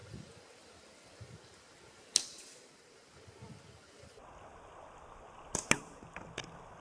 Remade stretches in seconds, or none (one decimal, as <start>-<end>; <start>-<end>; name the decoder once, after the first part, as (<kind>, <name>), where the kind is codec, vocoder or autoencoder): none